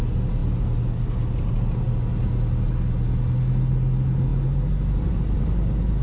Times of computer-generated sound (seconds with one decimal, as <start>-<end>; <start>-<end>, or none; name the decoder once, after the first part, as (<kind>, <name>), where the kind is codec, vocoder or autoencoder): none